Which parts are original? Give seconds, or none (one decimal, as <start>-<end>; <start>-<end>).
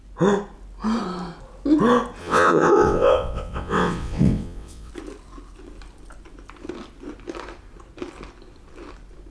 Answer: 0.0-2.2; 4.9-9.3